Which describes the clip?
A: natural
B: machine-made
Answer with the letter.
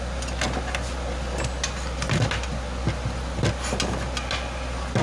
A